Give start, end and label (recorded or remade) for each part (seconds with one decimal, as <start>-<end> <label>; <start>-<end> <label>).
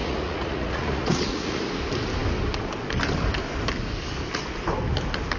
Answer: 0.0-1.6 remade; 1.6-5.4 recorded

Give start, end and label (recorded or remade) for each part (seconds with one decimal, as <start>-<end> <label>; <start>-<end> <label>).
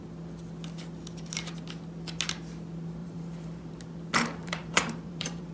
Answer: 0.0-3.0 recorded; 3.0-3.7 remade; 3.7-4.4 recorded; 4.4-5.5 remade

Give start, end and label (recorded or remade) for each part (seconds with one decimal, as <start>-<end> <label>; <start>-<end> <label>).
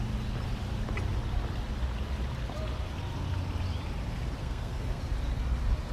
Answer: 0.0-4.4 recorded; 4.4-5.0 remade; 5.0-5.9 recorded